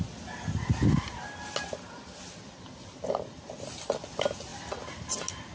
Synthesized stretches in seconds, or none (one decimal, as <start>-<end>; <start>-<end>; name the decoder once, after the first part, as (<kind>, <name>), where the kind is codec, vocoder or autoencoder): none